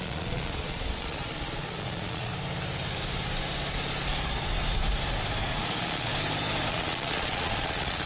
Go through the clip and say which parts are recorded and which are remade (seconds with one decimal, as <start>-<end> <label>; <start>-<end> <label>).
0.0-2.3 remade; 2.3-5.5 recorded; 5.5-6.1 remade; 6.1-6.7 recorded; 6.7-8.1 remade